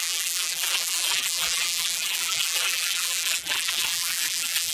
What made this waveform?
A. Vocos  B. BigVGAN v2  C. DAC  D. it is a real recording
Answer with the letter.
B